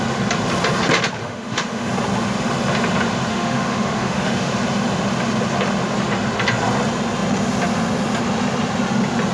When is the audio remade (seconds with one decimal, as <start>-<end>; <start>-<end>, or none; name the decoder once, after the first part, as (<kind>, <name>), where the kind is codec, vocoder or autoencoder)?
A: 1.2-1.9 (autoencoder, DAC-VAE); 3.3-4.5